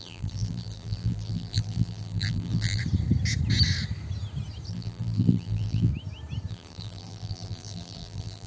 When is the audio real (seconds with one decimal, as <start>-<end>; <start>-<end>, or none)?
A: 2.8-4.7; 5.9-6.5